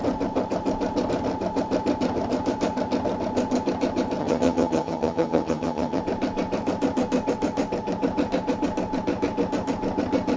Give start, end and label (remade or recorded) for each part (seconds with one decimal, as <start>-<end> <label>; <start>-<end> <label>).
0.0-4.2 recorded; 4.2-6.0 remade; 6.0-10.4 recorded